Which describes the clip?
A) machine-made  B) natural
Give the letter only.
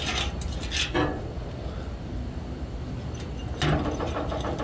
B